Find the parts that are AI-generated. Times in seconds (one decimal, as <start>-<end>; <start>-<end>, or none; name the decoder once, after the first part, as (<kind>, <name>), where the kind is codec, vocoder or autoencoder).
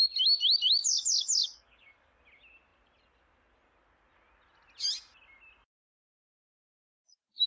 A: 0.8-2.2 (codec, DAC)